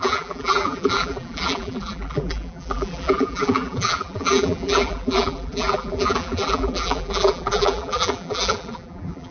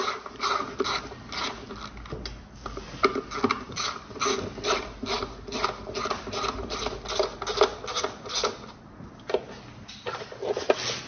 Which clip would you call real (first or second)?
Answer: second